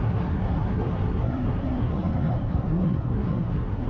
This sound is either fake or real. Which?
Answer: fake